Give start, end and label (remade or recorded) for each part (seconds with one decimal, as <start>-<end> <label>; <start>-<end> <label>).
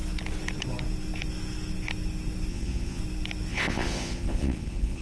0.0-2.5 recorded; 2.5-3.0 remade; 3.0-3.5 recorded; 3.5-5.0 remade